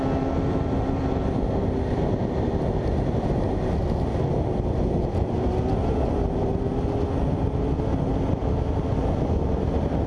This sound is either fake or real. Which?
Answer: real